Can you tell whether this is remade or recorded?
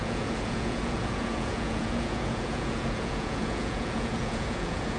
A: remade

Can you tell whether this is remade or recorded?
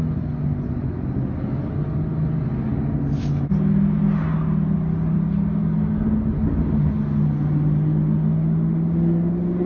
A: recorded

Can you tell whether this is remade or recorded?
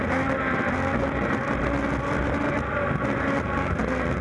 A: recorded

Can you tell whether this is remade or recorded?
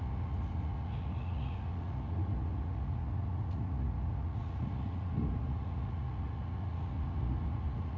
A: remade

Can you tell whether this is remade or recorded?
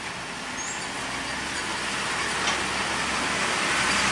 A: recorded